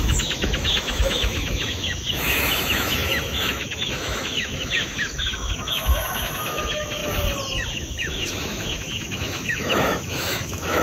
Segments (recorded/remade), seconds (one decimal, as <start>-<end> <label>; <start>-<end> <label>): 0.0-7.0 remade; 7.0-7.7 recorded; 7.7-10.8 remade